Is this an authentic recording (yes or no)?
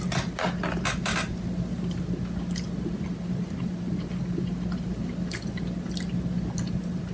yes